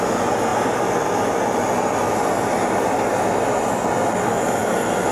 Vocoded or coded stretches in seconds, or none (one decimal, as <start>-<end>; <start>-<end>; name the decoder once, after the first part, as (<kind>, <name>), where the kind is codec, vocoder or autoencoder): none